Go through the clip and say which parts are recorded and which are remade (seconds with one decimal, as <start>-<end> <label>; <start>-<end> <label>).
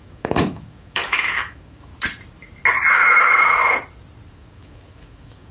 0.0-1.9 remade; 1.9-2.9 recorded; 2.9-3.6 remade; 3.6-4.3 recorded; 4.3-5.5 remade